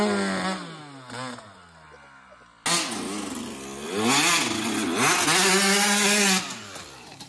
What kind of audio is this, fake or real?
real